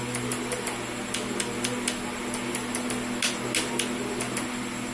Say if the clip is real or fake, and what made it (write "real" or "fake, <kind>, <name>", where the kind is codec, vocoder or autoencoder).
real